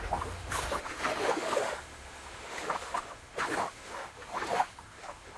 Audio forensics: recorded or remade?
remade